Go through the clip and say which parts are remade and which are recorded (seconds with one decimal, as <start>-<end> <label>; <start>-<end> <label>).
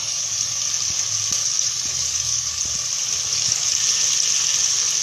0.0-0.7 remade; 0.7-1.4 recorded; 1.4-2.6 remade; 2.6-3.3 recorded; 3.3-3.8 remade; 3.8-5.0 recorded